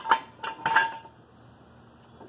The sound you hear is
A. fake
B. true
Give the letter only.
B